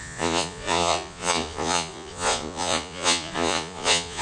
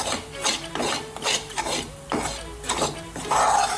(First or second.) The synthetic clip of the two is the first